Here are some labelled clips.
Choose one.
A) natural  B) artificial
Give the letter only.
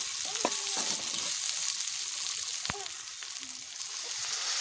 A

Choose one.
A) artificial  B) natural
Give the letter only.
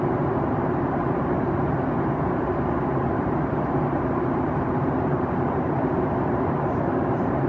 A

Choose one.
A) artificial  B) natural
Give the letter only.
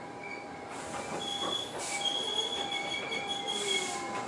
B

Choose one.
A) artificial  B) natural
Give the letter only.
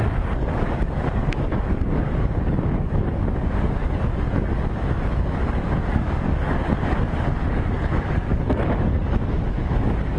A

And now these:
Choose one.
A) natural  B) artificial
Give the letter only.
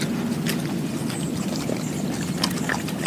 A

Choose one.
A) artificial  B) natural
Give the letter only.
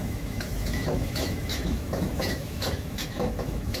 A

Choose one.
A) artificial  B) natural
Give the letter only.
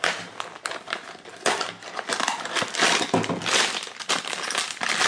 B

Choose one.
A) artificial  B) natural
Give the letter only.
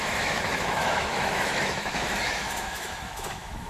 A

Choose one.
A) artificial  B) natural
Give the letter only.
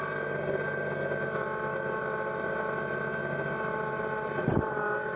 B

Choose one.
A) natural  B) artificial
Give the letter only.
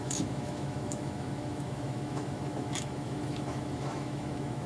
B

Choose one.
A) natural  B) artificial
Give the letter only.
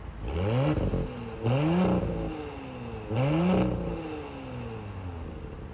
A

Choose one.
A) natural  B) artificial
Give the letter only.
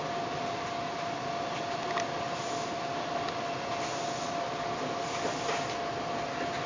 A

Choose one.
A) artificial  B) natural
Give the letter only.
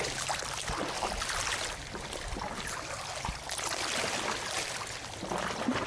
B